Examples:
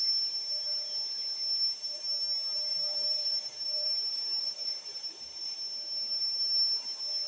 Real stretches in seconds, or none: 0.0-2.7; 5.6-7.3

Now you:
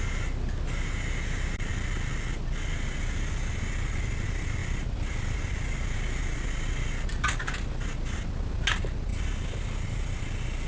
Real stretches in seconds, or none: 0.0-4.6; 7.7-9.1; 10.2-10.7

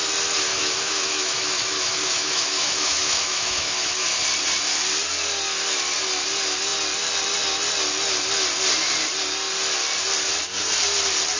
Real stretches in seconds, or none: 0.0-0.5; 4.2-11.4

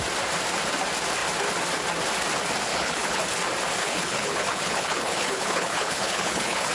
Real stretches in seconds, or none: 0.0-2.7; 3.2-3.8

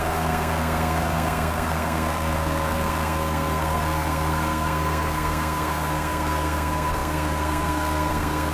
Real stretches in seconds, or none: none

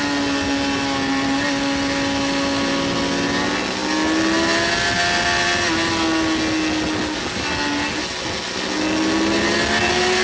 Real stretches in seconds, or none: 0.0-10.2

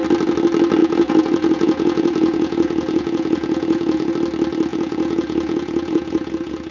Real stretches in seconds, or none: 0.0-0.8; 4.1-4.7